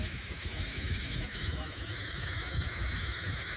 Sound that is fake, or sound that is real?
fake